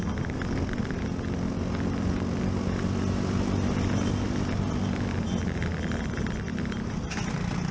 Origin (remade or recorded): recorded